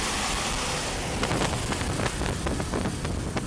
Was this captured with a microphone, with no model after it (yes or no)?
yes